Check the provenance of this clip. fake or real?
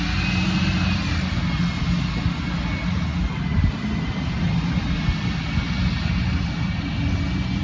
real